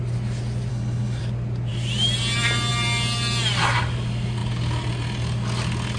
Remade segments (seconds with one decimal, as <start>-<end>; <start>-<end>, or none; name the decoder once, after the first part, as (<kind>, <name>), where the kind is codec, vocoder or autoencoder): 0.7-1.2 (codec, HILCodec)